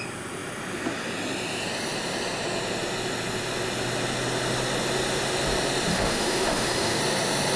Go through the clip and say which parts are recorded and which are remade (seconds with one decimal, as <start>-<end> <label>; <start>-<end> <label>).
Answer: 0.0-5.9 recorded; 5.9-7.0 remade; 7.0-7.6 recorded